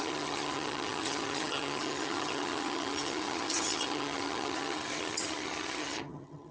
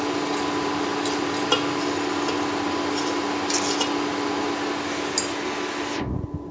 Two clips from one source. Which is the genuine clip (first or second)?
second